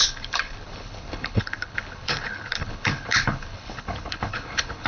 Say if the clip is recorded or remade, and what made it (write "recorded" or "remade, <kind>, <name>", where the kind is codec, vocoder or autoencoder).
remade, codec, HILCodec